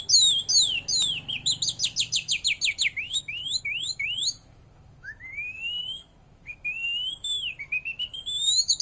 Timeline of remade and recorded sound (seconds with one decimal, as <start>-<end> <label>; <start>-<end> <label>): 0.0-3.4 recorded; 3.4-7.6 remade; 7.6-8.1 recorded; 8.1-8.8 remade